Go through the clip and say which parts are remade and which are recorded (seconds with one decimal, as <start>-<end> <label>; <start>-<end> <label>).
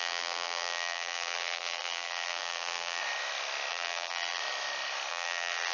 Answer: 0.0-3.0 remade; 3.0-3.7 recorded; 3.7-4.4 remade; 4.4-5.1 recorded; 5.1-5.7 remade